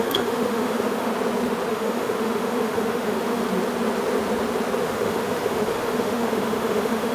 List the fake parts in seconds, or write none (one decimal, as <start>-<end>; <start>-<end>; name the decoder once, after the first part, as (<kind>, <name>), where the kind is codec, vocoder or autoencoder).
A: 0.0-1.1 (autoencoder, DAC-VAE); 1.7-3.4; 4.8-7.1